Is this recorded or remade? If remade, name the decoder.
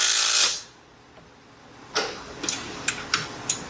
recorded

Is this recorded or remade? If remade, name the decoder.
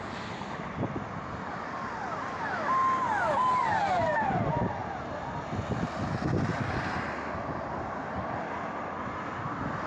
recorded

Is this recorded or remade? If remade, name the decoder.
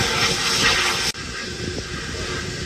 recorded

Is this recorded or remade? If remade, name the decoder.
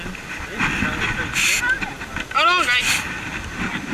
recorded